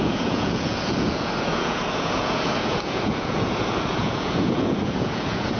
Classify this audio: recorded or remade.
remade